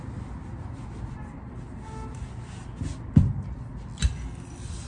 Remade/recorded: recorded